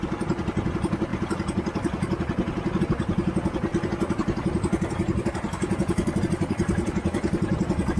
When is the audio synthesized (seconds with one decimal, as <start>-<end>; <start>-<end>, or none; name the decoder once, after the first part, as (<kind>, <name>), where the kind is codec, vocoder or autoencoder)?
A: 3.7-6.2 (vocoder, BigVGAN v2)